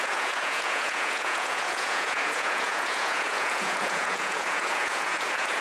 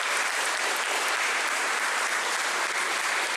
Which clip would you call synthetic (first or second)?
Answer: first